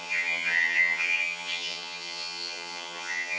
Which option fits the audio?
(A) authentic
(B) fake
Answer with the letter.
B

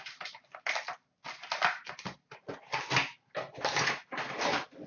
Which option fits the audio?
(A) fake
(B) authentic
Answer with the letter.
B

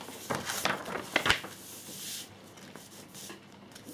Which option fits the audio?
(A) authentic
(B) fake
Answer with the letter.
A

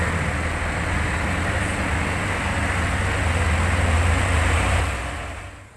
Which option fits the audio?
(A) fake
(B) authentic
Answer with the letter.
B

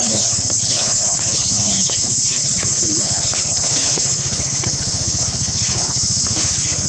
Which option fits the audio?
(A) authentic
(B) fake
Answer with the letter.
B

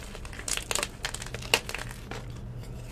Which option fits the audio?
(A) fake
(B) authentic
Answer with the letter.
B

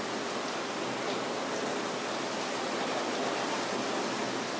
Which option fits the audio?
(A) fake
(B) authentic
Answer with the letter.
B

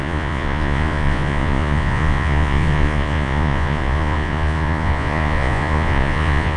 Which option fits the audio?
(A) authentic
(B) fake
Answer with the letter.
B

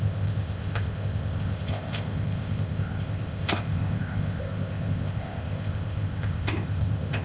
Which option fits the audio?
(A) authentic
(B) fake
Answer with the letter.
B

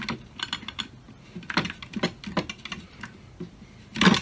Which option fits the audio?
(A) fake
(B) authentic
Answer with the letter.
B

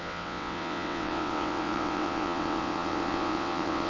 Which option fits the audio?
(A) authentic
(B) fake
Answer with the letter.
B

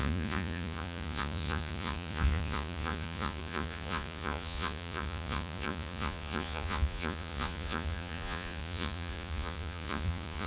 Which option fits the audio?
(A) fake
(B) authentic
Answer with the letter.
A